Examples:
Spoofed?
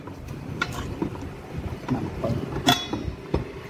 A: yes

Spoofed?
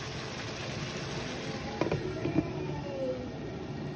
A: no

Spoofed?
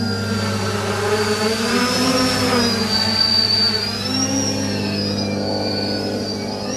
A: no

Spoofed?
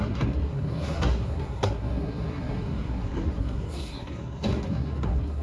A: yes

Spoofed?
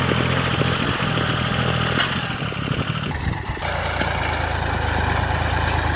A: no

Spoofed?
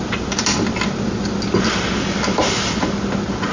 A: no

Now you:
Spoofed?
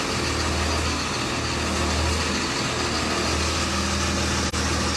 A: no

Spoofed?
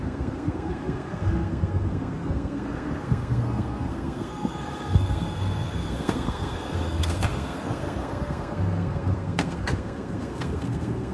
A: yes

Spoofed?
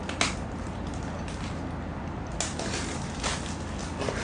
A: no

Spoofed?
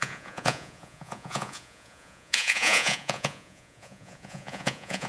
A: yes